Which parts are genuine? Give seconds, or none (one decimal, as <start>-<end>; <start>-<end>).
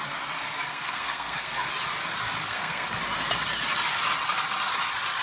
0.0-0.7; 1.7-2.4; 3.0-5.2